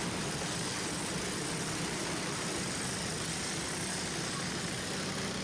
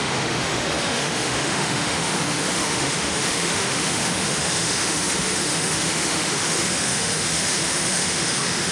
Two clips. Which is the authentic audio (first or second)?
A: first